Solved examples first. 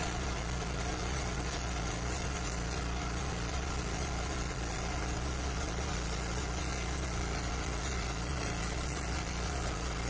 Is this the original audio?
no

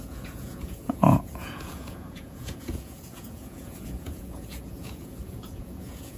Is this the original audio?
no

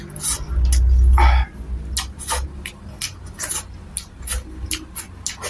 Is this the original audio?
yes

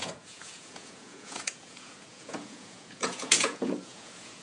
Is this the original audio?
no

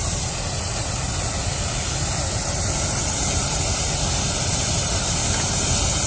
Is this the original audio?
yes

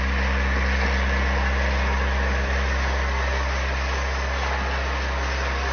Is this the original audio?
yes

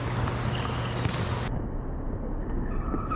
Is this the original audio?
yes